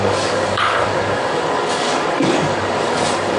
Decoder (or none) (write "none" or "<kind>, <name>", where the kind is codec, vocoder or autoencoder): codec, DAC